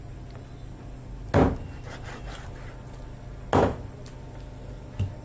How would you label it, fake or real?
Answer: real